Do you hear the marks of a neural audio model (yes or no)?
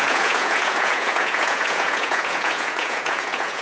yes